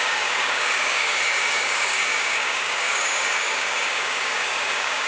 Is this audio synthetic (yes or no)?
yes